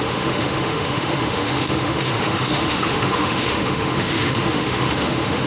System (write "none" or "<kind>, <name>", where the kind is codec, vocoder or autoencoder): autoencoder, DAC-VAE